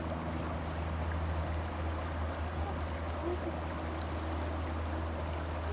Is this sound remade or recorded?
recorded